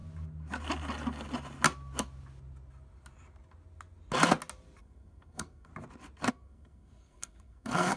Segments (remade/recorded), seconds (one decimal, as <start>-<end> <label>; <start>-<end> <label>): 0.0-4.8 recorded; 4.8-5.7 remade; 5.7-6.3 recorded; 6.3-8.0 remade